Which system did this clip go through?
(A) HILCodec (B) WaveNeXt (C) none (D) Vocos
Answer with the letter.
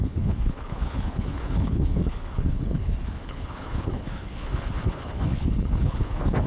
A